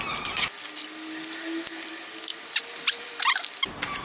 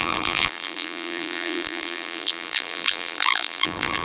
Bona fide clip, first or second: first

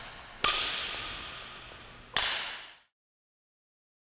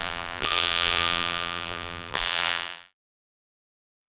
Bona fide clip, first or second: first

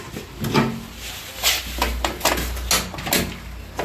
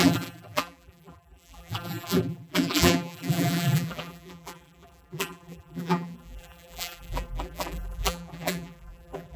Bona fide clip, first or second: first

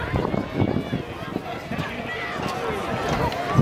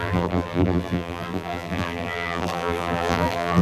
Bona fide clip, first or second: first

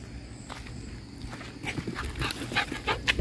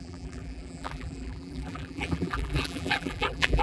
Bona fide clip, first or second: first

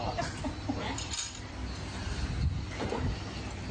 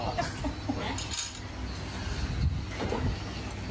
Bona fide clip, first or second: second